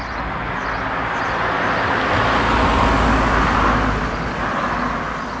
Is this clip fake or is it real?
real